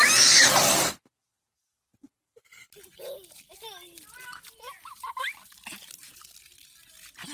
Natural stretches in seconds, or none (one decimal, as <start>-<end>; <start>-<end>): 0.0-7.3